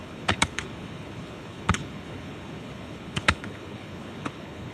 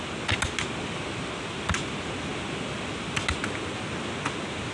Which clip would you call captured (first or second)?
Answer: second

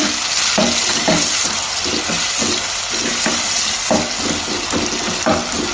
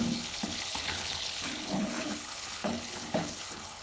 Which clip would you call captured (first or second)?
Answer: first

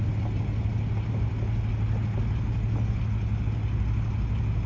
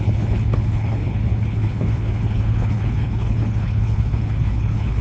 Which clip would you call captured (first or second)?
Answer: first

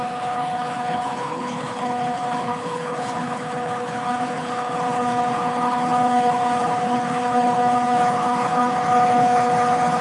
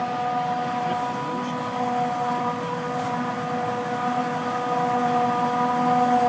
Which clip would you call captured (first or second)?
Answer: second